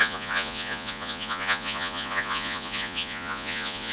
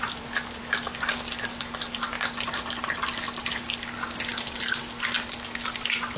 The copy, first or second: first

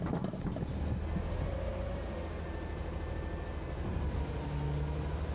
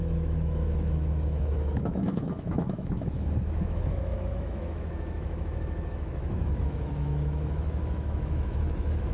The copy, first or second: second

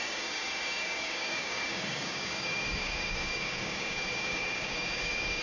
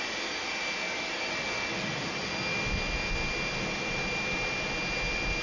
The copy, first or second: first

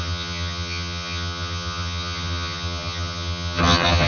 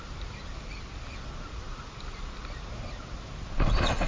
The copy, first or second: first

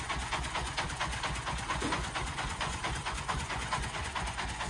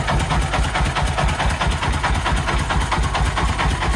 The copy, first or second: first